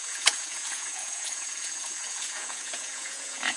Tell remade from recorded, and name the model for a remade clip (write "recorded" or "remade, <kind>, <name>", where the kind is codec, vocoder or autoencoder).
remade, vocoder, Vocos